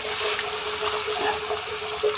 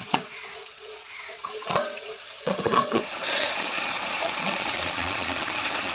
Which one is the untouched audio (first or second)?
first